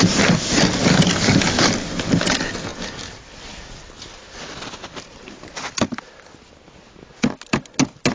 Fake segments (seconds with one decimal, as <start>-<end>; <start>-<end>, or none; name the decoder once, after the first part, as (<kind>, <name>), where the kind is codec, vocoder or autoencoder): none